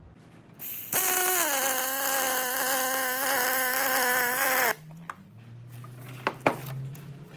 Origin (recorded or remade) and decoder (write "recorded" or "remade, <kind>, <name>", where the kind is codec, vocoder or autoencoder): recorded